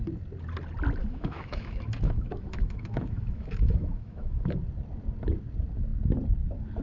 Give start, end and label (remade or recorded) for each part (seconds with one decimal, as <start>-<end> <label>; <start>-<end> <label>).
0.0-1.0 recorded; 1.0-4.6 remade; 4.6-6.8 recorded